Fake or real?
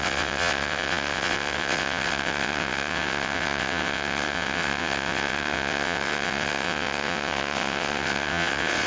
fake